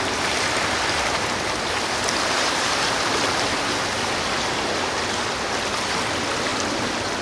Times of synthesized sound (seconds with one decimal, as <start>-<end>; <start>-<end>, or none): none